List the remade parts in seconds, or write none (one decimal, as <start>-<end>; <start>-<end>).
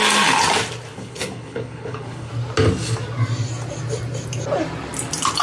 0.9-2.3